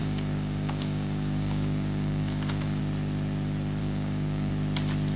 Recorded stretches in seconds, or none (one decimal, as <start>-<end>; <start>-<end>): 2.8-3.8; 4.5-5.2